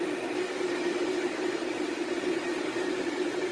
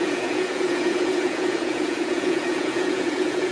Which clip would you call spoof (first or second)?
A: second